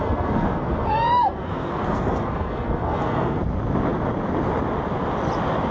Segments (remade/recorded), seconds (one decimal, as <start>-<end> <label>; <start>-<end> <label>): 0.0-3.4 remade; 3.4-5.7 recorded